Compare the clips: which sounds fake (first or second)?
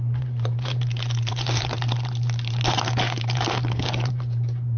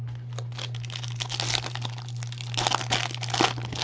first